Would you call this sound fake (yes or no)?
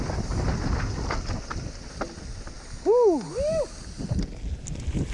no